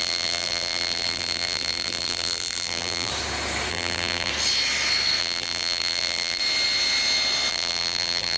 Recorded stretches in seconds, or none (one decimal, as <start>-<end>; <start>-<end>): 3.1-3.7; 4.3-5.2; 6.4-7.5